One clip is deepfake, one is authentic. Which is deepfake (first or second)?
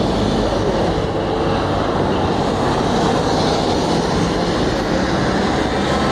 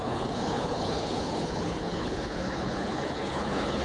second